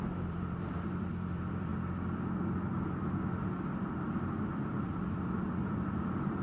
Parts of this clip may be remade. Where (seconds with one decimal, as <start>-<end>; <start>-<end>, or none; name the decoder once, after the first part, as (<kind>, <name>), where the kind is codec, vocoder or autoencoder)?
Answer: 0.0-1.7 (vocoder, BigVGAN v2); 5.0-6.4